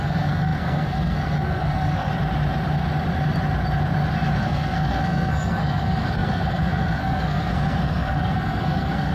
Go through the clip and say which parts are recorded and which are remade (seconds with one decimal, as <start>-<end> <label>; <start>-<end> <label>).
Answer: 0.0-2.1 remade; 2.1-4.4 recorded; 4.4-9.1 remade